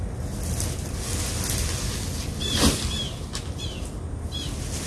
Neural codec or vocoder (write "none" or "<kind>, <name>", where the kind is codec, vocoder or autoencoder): none